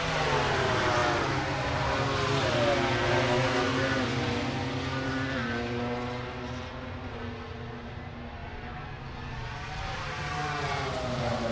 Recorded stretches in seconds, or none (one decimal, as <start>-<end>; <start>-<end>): 0.0-11.5